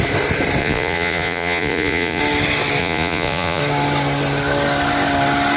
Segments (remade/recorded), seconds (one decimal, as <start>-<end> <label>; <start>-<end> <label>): 0.0-0.6 recorded; 0.6-2.2 remade; 2.2-2.8 recorded; 2.8-3.6 remade; 3.6-5.6 recorded